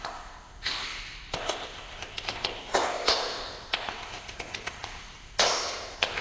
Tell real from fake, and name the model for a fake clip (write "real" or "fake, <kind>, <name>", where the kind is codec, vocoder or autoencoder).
fake, codec, ZipCodec